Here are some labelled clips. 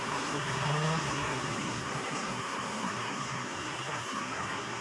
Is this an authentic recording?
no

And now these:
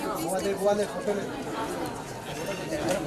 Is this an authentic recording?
yes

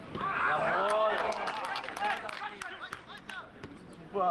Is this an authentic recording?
yes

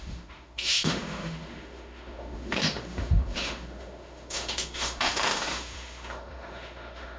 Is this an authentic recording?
no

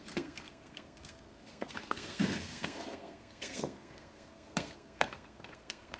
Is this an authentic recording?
no